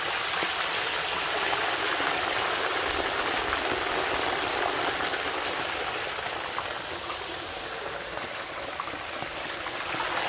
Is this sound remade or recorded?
recorded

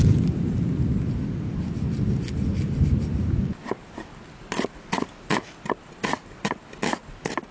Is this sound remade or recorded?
recorded